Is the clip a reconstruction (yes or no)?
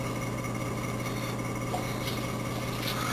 no